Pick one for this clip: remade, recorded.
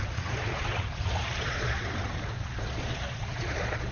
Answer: remade